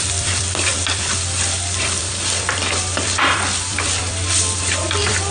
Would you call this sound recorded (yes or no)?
no